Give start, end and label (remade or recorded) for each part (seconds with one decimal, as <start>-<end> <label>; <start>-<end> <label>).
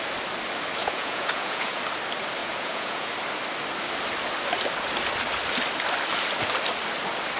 0.0-0.8 recorded; 0.8-1.8 remade; 1.8-2.4 recorded; 2.4-3.1 remade; 3.1-7.4 recorded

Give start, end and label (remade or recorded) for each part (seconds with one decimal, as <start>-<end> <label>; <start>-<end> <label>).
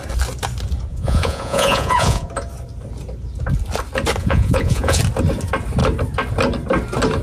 0.0-0.9 recorded; 0.9-2.3 remade; 2.3-4.2 recorded; 4.2-5.0 remade; 5.0-7.2 recorded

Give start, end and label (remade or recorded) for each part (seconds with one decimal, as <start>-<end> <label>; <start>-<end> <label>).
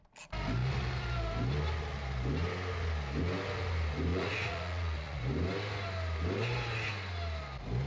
0.0-4.1 recorded; 4.1-5.2 remade; 5.2-7.9 recorded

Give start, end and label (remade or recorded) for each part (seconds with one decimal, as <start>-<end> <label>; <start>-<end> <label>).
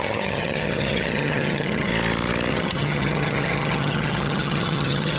0.0-1.9 remade; 1.9-2.5 recorded; 2.5-5.2 remade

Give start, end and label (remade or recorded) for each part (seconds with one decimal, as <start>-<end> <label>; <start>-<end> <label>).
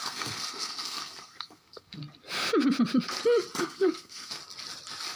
0.0-2.0 remade; 2.0-3.6 recorded; 3.6-4.4 remade; 4.4-5.2 recorded